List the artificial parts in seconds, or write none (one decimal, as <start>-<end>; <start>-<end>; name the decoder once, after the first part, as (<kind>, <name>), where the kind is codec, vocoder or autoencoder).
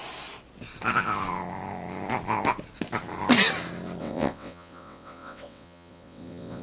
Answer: 4.0-6.6 (vocoder, WaveNeXt)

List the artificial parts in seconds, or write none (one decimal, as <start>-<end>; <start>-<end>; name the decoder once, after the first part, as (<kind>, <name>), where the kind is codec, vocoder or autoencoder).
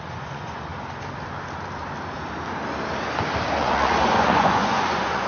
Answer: 0.0-0.7 (vocoder, Vocos); 3.6-5.3